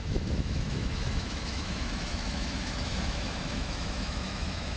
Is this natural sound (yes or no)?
no